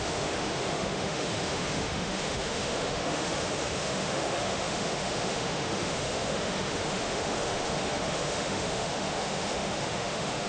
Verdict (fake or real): fake